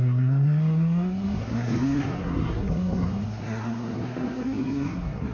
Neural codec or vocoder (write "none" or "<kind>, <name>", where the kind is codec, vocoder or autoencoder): codec, SNAC